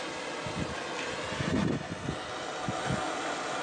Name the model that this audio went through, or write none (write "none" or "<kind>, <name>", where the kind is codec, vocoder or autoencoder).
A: none